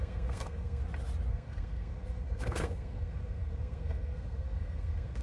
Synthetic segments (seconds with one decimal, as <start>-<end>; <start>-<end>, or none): 0.0-0.8; 1.3-5.2

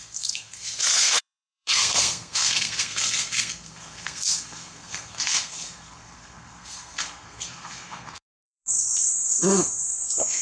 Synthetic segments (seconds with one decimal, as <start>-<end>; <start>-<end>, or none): 0.0-10.4

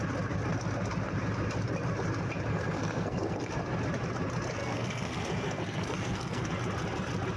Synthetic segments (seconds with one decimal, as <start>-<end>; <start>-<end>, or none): 2.5-3.5; 4.6-6.5

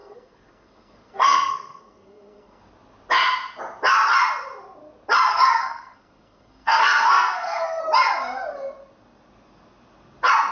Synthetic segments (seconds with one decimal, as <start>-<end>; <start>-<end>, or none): 0.0-2.6; 5.3-7.8